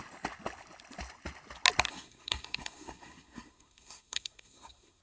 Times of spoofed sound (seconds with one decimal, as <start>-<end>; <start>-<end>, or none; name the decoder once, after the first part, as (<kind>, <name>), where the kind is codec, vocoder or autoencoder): 1.9-5.0 (codec, SNAC)